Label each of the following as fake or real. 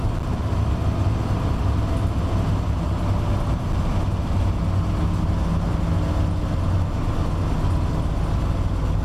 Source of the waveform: real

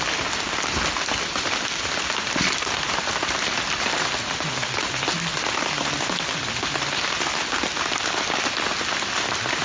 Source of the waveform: real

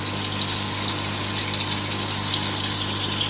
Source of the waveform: real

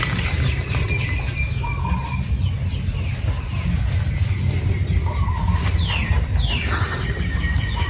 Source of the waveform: real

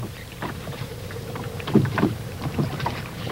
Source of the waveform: fake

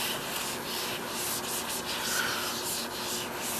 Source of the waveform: real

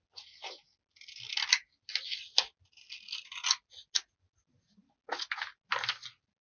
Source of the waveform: real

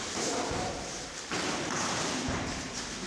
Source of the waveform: real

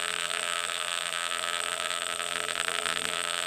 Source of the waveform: fake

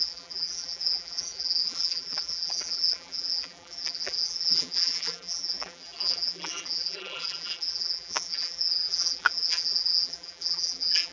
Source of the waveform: fake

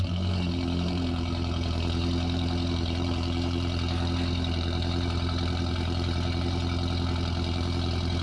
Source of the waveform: fake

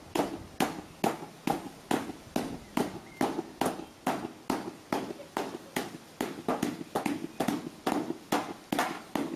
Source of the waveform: real